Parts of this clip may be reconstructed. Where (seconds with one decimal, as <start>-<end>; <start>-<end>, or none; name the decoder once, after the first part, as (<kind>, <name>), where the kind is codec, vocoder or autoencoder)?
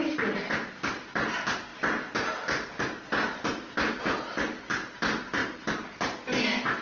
none